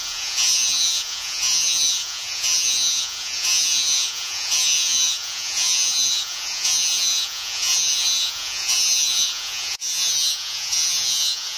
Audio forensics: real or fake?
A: fake